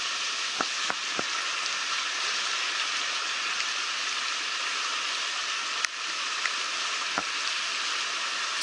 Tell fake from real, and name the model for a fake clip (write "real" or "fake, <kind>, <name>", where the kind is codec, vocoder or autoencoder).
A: real